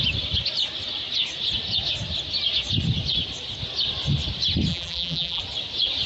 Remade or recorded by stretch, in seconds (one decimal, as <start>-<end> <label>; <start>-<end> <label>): 0.0-4.7 recorded; 4.7-5.4 remade; 5.4-6.1 recorded